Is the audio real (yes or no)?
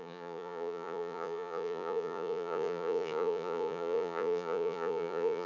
no